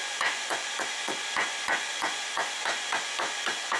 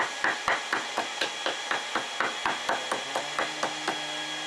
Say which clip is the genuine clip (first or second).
second